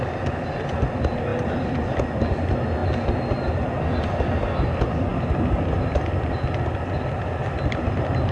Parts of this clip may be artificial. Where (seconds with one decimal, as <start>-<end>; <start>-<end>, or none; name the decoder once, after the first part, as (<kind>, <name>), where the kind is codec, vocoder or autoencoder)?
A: none